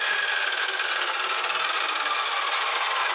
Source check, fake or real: real